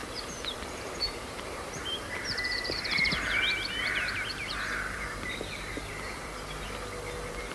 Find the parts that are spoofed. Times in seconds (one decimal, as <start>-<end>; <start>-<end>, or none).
0.0-4.5